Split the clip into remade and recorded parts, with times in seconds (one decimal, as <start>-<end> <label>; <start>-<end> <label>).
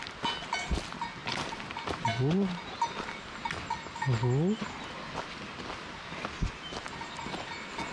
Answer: 0.0-7.9 recorded